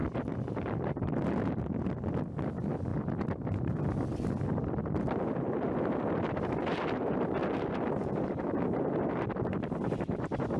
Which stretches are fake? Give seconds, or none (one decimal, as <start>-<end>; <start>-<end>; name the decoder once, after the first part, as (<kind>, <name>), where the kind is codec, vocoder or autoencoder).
none